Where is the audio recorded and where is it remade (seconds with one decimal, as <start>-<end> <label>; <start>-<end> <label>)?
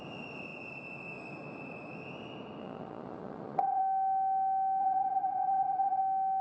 0.0-2.6 recorded; 2.6-3.8 remade; 3.8-4.8 recorded; 4.8-6.0 remade; 6.0-6.4 recorded